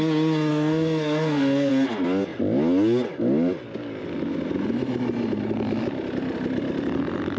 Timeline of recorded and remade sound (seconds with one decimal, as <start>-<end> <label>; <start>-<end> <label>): 0.0-0.5 recorded; 0.5-1.7 remade; 1.7-7.4 recorded